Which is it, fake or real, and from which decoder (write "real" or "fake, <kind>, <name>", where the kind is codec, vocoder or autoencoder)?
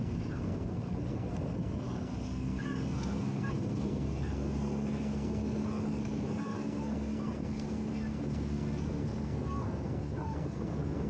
fake, codec, SNAC